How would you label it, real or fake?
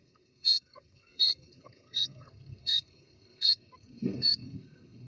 fake